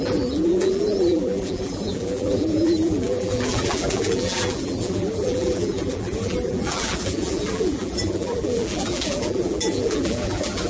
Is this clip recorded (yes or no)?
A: no